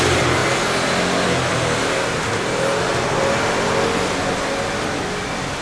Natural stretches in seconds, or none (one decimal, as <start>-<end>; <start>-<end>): 0.0-5.6